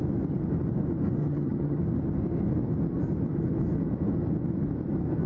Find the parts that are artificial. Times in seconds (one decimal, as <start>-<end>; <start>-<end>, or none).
1.2-1.8